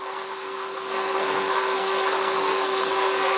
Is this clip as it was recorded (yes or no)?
no